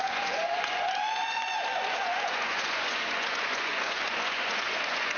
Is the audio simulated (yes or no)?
yes